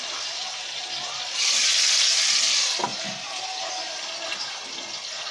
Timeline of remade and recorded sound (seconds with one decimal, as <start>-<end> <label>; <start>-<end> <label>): 0.0-2.9 recorded; 2.9-4.6 remade; 4.6-5.3 recorded